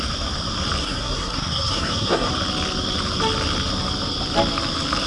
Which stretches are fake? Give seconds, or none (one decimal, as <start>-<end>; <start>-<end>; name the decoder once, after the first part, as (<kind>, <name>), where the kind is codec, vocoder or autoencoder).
0.8-2.3 (codec, SNAC)